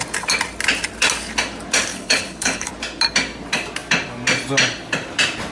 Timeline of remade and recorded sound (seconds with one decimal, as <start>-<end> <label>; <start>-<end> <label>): 0.0-1.9 recorded; 1.9-2.7 remade; 2.7-5.5 recorded

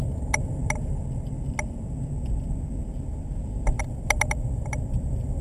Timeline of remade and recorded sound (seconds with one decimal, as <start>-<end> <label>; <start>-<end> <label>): 0.0-0.6 remade; 0.6-3.8 recorded; 3.8-5.4 remade

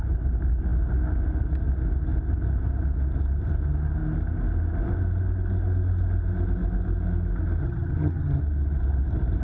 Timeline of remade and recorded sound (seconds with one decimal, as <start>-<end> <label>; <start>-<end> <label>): 0.0-7.6 recorded; 7.6-8.4 remade; 8.4-9.4 recorded

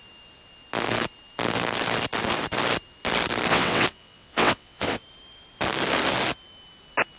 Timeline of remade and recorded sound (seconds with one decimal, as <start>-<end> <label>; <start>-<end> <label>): 0.0-3.5 recorded; 3.5-5.0 remade; 5.0-7.2 recorded

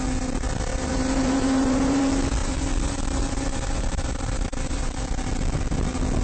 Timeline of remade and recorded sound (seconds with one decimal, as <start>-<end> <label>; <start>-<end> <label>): 0.0-0.7 recorded; 0.7-2.0 remade; 2.0-2.4 recorded; 2.4-5.1 remade; 5.1-6.2 recorded

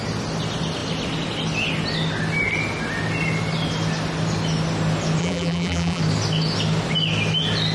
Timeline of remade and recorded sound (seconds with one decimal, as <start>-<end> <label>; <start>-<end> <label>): 0.0-5.2 recorded; 5.2-6.0 remade; 6.0-7.7 recorded

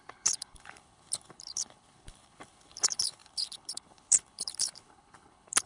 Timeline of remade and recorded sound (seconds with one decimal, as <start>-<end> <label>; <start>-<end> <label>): 0.0-5.7 remade

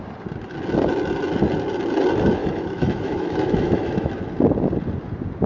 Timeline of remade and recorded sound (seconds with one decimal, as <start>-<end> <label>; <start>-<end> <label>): 0.0-2.4 recorded; 2.4-4.2 remade; 4.2-5.5 recorded